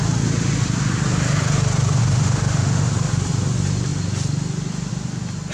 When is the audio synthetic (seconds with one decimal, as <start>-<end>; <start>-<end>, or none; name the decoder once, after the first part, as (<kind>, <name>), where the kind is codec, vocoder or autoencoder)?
2.0-2.9 (autoencoder, DAC-VAE)